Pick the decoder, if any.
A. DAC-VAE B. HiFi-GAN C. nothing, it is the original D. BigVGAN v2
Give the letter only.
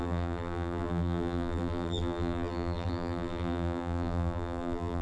D